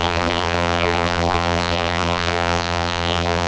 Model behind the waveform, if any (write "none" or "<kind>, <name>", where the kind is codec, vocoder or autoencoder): vocoder, BigVGAN v2